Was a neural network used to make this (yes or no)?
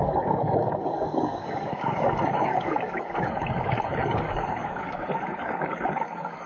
yes